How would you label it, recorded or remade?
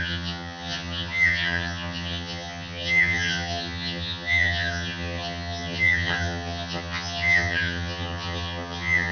remade